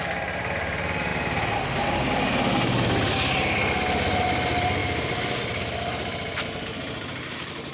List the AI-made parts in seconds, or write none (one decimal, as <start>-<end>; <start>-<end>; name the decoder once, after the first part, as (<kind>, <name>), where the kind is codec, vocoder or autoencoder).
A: none